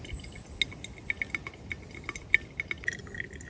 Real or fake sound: real